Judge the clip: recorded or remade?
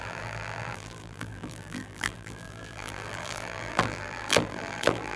remade